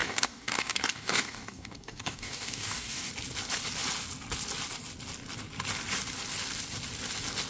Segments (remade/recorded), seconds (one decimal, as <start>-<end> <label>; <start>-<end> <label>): 0.0-3.1 remade; 3.1-7.5 recorded